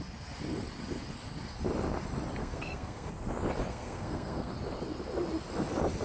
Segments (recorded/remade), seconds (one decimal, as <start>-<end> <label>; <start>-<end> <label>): 0.0-2.4 recorded; 2.4-3.1 remade; 3.1-3.7 recorded; 3.7-4.5 remade; 4.5-6.0 recorded